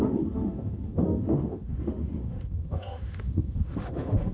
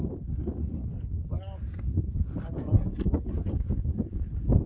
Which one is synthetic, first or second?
first